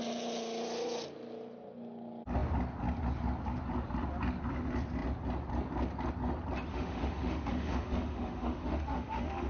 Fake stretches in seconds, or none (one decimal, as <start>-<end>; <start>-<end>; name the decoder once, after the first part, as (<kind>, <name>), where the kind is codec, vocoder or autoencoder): 6.7-9.5 (autoencoder, DAC-VAE)